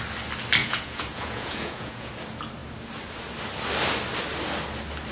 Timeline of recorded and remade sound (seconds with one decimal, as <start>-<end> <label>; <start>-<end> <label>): 0.0-0.6 recorded; 0.6-2.1 remade; 2.1-5.1 recorded